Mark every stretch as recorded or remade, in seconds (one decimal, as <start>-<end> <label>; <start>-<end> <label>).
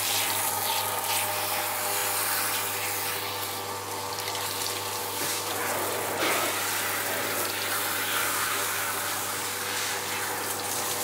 0.0-5.0 recorded; 5.0-5.6 remade; 5.6-8.2 recorded; 8.2-9.9 remade; 9.9-11.0 recorded